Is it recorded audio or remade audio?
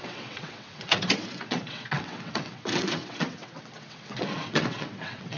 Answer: remade